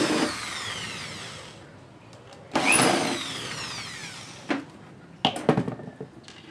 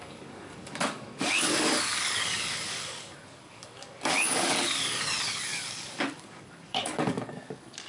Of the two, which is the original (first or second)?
first